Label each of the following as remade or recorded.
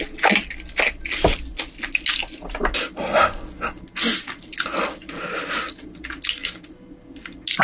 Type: recorded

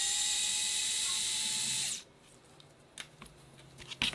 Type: recorded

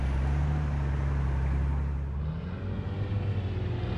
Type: recorded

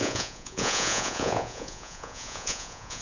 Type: remade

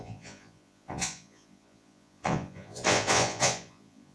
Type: remade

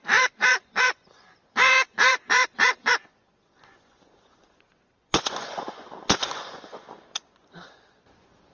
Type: remade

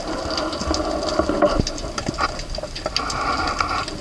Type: recorded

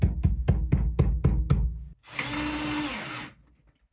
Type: recorded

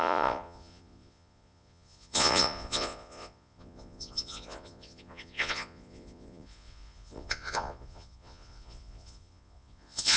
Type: remade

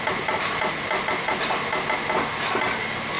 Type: recorded